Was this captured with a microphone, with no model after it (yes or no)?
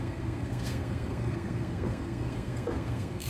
no